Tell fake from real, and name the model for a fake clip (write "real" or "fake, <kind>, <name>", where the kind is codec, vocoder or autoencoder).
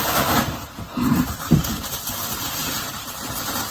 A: fake, vocoder, BigVGAN v2